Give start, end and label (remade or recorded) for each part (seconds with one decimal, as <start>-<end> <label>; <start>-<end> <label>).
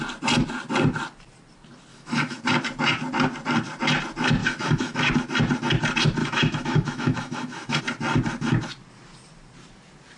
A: 0.0-1.9 recorded; 1.9-2.4 remade; 2.4-4.4 recorded; 4.4-5.1 remade; 5.1-6.2 recorded; 6.2-7.8 remade; 7.8-10.2 recorded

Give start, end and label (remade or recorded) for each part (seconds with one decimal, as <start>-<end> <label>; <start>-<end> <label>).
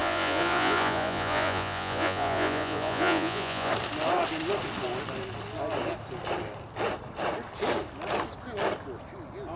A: 0.0-3.7 remade; 3.7-9.6 recorded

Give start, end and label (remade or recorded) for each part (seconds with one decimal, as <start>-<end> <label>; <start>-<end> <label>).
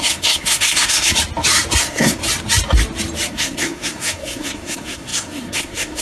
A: 0.0-1.1 remade; 1.1-1.8 recorded; 1.8-2.2 remade; 2.2-3.3 recorded; 3.3-6.0 remade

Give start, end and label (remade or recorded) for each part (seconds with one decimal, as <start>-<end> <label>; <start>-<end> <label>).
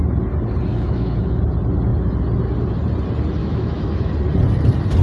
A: 0.0-0.7 recorded; 0.7-1.4 remade; 1.4-3.4 recorded; 3.4-4.1 remade; 4.1-5.0 recorded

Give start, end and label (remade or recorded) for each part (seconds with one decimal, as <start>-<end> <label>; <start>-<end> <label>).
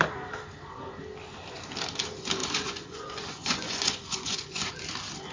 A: 0.0-2.4 recorded; 2.4-4.7 remade; 4.7-5.3 recorded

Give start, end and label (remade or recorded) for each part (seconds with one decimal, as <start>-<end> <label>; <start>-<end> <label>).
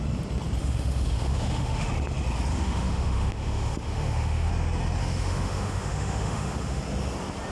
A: 0.0-0.6 recorded; 0.6-1.9 remade; 1.9-2.5 recorded; 2.5-4.5 remade; 4.5-5.0 recorded; 5.0-6.8 remade; 6.8-7.5 recorded